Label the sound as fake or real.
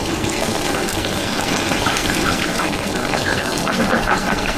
fake